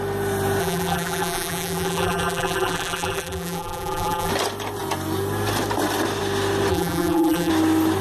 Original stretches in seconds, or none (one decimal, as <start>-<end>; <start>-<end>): 0.0-0.6; 4.3-6.7; 7.5-8.0